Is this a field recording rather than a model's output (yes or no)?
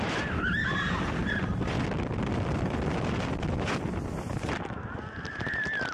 no